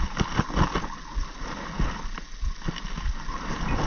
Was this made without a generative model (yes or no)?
yes